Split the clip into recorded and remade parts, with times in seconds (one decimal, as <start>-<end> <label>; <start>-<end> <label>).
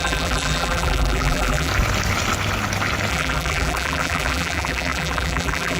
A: 0.0-1.7 remade; 1.7-3.1 recorded; 3.1-5.8 remade